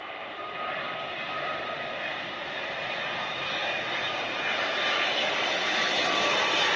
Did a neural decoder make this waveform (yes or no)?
no